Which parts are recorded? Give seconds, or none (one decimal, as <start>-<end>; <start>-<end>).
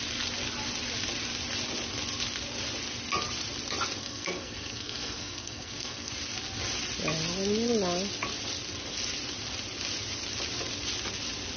0.0-4.0; 6.1-11.6